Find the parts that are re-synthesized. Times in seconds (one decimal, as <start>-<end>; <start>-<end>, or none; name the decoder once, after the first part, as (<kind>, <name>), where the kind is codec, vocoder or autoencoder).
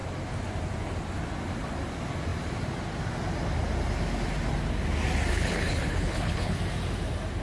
5.3-6.6 (codec, HILCodec)